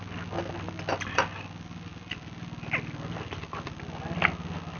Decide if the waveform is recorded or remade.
recorded